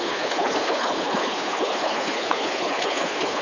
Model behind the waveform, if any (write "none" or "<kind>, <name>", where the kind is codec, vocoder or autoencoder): codec, HILCodec